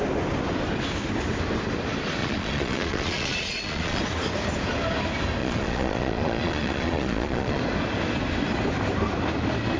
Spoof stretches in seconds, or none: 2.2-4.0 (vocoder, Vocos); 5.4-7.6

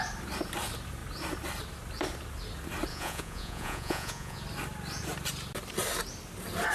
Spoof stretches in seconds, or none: 2.9-4.4 (vocoder, Vocos)

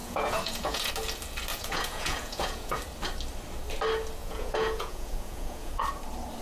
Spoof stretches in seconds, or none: 0.0-0.9 (vocoder, Vocos); 1.5-2.8; 4.2-5.8